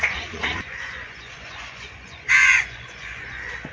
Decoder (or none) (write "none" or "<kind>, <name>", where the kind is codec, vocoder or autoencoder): vocoder, Vocos